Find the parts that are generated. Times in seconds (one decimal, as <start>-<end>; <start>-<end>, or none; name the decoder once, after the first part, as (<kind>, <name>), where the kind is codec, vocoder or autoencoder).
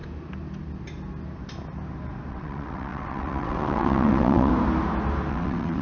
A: 2.3-4.5 (vocoder, WaveNeXt); 5.3-5.8